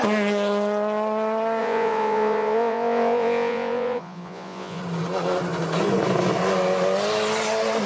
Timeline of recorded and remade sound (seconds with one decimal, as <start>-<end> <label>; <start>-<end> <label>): 0.0-1.6 recorded; 1.6-4.8 remade; 4.8-7.9 recorded